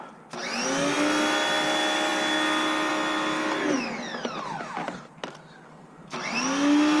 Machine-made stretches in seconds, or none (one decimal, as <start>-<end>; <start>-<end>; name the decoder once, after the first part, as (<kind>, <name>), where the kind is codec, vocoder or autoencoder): none